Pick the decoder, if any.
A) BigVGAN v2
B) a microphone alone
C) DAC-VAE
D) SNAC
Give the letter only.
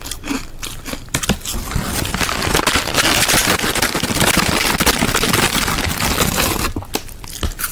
B